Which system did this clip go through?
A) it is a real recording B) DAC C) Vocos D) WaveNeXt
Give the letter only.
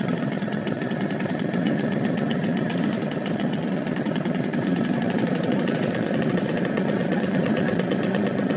C